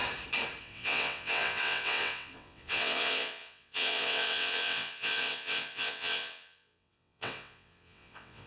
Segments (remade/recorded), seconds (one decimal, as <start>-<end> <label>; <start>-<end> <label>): 0.0-0.6 recorded; 0.6-8.5 remade